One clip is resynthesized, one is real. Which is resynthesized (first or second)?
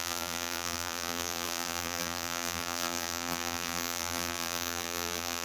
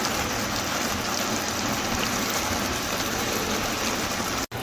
first